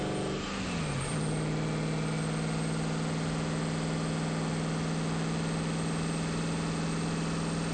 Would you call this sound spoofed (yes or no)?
no